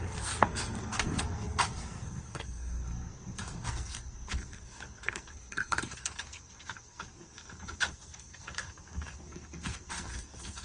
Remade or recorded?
remade